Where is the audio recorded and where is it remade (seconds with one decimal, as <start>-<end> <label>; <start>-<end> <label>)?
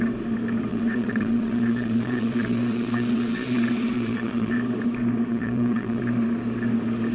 0.0-0.7 recorded; 0.7-4.5 remade; 4.5-5.3 recorded; 5.3-6.0 remade; 6.0-7.1 recorded